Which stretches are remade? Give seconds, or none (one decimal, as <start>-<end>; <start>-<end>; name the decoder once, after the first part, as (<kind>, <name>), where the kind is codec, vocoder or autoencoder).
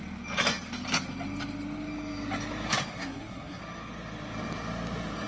2.9-3.6 (codec, SNAC)